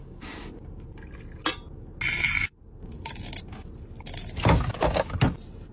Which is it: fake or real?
real